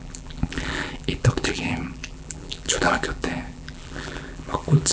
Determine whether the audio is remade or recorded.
remade